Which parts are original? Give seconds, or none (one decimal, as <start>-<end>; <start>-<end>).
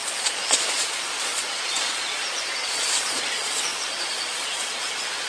none